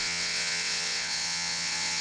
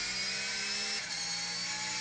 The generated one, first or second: first